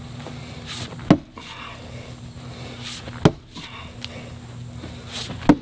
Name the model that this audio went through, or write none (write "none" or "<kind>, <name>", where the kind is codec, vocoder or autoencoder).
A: none